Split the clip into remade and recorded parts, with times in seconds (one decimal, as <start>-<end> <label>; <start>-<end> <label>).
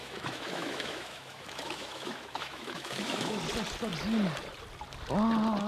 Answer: 0.0-3.4 remade; 3.4-5.7 recorded